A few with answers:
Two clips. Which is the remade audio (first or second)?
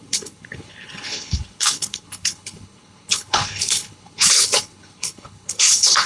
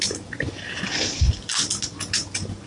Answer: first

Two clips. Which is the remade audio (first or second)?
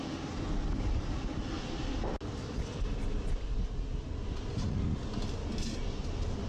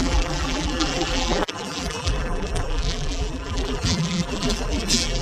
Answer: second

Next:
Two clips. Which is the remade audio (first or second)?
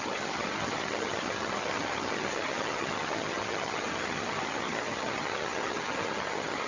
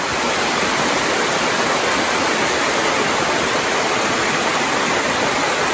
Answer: first